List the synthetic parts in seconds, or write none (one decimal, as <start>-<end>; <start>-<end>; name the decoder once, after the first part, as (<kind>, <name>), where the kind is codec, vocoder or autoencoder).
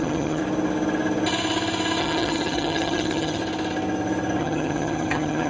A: 0.0-0.4 (vocoder, HiFi-GAN); 2.0-3.4; 4.4-5.5